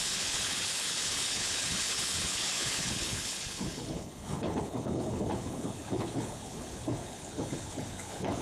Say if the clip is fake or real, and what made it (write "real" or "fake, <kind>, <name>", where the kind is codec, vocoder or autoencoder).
fake, codec, HILCodec